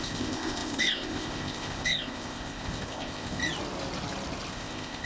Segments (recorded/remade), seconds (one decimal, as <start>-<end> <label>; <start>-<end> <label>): 0.0-3.4 remade; 3.4-4.5 recorded; 4.5-5.1 remade